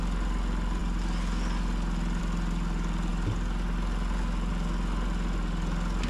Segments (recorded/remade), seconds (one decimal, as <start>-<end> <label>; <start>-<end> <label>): 0.0-6.1 recorded